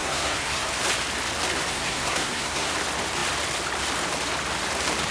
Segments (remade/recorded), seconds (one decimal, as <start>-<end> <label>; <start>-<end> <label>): 0.0-0.7 remade; 0.7-1.7 recorded; 1.7-2.7 remade; 2.7-5.1 recorded